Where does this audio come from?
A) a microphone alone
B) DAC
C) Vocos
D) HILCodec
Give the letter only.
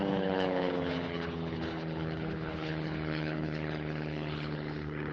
D